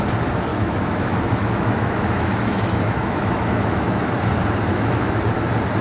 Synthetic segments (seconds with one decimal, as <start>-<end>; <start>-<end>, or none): 0.5-4.0; 4.7-5.2